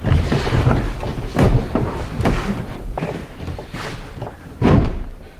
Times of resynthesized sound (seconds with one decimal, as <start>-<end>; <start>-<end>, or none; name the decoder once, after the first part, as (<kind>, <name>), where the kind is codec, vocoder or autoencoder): 0.0-0.7 (vocoder, BigVGAN v2); 1.1-3.4; 4.6-5.4

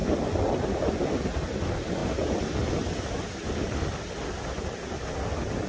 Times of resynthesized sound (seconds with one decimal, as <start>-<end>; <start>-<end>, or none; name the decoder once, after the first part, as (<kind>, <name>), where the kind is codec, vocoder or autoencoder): none